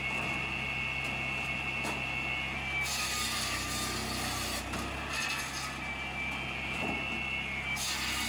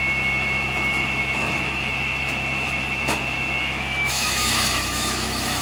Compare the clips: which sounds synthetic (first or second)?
second